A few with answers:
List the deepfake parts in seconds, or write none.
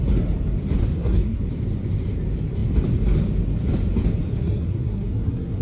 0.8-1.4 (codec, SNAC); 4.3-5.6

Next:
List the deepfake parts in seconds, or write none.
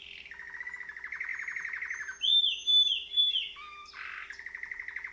none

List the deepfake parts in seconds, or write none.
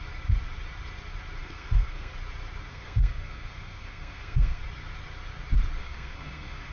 1.4-2.1 (codec, SNAC); 2.7-4.6; 5.8-6.7